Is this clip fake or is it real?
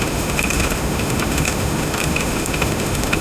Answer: fake